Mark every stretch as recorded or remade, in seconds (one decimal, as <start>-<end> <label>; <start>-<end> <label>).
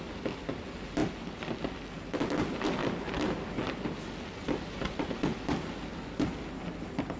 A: 0.0-7.2 recorded